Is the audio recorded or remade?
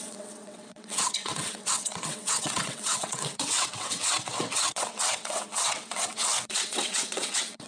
remade